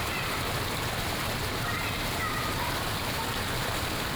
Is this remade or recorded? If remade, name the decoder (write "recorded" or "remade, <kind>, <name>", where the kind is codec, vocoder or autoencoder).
remade, vocoder, BigVGAN v2